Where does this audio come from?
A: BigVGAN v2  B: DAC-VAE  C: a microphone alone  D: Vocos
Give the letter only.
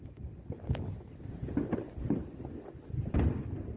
A